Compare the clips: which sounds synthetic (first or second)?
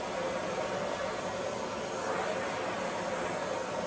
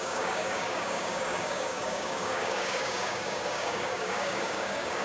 second